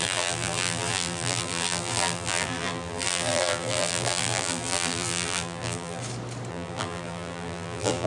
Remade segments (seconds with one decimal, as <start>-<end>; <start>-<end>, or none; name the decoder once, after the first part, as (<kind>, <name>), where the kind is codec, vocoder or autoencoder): 0.0-6.0 (vocoder, BigVGAN v2); 6.5-8.1